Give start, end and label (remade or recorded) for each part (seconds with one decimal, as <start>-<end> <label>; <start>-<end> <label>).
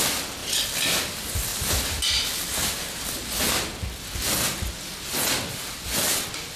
0.0-6.6 recorded